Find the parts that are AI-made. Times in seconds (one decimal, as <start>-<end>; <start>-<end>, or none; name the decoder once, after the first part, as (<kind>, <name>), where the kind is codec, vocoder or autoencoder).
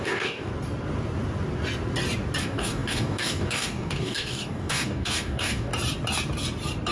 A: 0.0-0.5 (codec, DAC); 2.4-5.7